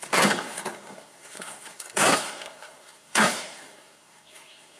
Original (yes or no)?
no